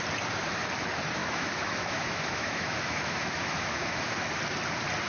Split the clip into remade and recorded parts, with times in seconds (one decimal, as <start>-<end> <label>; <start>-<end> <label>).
0.0-1.2 recorded; 1.2-4.3 remade; 4.3-5.1 recorded